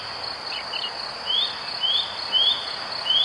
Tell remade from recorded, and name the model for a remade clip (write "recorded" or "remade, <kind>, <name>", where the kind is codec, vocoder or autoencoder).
recorded